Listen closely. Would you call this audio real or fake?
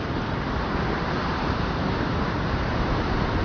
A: fake